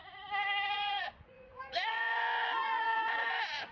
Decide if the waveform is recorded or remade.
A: remade